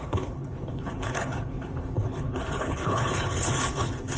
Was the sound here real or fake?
fake